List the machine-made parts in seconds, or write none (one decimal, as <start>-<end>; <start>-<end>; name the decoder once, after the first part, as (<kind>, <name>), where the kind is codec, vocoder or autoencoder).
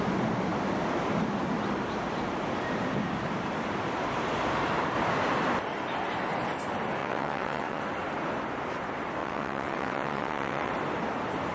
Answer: 7.0-7.8 (vocoder, WaveNeXt); 9.2-10.7